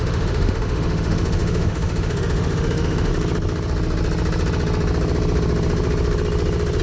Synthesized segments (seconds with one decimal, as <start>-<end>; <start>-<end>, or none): 0.0-3.1

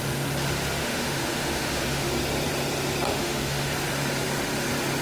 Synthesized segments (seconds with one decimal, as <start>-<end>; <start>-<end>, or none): 0.8-2.1; 3.1-3.7

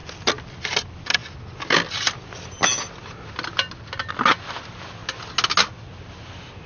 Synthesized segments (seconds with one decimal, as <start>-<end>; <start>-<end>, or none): none

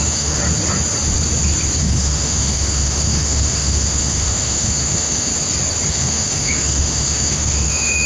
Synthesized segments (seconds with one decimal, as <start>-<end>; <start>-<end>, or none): 0.0-0.4; 1.8-5.3; 5.9-8.1

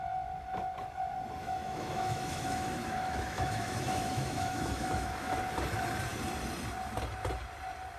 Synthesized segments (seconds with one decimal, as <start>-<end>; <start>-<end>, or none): 1.4-5.4